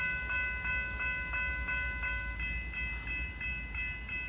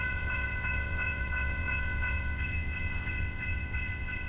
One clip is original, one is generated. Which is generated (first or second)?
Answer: second